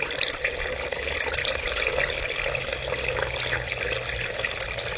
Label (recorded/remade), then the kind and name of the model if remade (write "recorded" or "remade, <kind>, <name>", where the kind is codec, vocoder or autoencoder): recorded